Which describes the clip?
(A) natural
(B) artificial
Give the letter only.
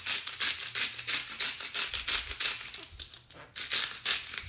A